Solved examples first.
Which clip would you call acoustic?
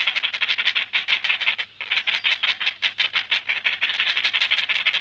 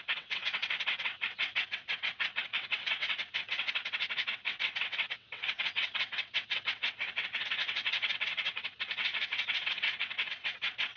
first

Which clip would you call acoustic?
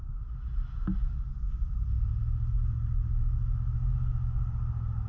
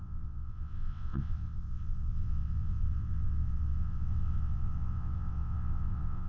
first